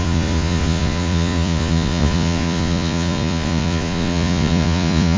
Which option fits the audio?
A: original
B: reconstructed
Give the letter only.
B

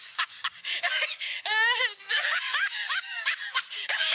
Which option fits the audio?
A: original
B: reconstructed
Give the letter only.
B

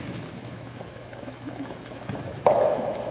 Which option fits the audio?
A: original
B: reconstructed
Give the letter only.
B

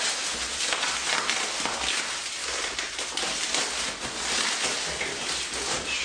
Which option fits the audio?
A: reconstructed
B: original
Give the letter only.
B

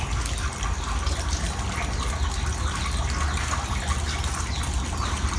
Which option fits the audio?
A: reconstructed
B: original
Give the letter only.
B